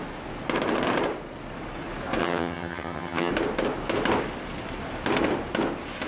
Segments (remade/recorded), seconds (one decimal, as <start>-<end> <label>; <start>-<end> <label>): 0.0-2.2 recorded; 2.2-3.3 remade; 3.3-6.1 recorded